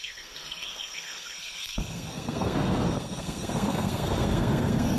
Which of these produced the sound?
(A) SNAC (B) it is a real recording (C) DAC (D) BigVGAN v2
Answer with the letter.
A